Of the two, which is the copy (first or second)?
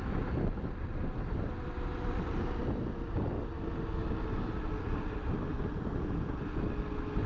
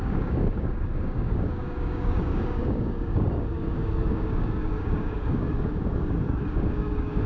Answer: second